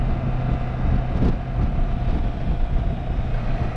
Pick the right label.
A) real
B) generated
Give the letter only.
A